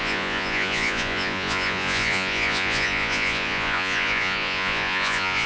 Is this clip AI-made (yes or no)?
yes